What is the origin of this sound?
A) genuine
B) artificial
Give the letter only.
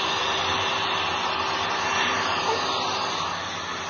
A